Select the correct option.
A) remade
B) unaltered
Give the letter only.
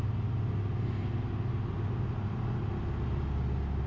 B